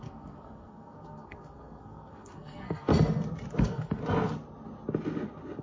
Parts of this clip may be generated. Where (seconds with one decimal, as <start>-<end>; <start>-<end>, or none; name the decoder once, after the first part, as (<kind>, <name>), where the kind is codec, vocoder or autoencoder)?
0.0-2.9 (codec, SNAC); 3.6-4.0